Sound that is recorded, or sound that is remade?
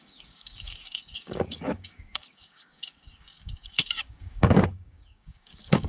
remade